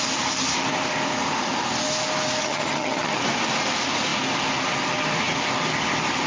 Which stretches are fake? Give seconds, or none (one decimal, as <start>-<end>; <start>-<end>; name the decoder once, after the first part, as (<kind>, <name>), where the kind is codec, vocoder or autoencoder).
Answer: 2.4-3.2 (vocoder, HiFi-GAN)